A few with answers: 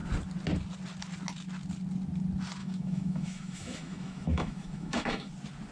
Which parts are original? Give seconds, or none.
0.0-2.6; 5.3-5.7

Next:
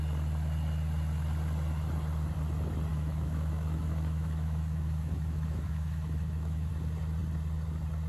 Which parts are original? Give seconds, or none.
0.0-2.9; 6.7-8.1

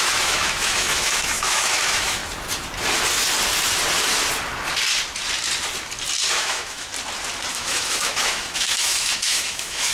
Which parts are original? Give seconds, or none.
2.2-6.3; 6.9-7.5

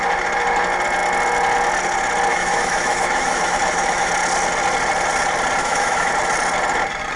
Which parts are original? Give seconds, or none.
0.0-2.3; 4.1-5.6; 6.1-7.2